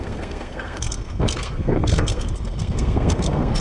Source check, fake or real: fake